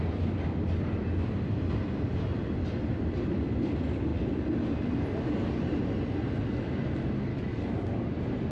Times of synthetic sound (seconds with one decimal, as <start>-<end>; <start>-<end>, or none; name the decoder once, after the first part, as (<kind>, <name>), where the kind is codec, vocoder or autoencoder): 7.3-8.1 (codec, DAC)